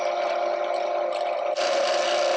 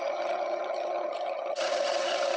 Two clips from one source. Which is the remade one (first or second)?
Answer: second